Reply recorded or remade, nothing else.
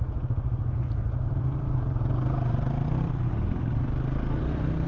recorded